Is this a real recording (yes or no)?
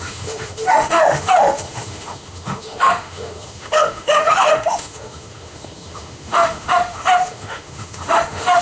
no